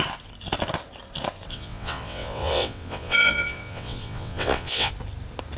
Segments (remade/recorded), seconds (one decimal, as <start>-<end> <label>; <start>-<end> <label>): 0.0-1.5 recorded; 1.5-4.9 remade; 4.9-5.6 recorded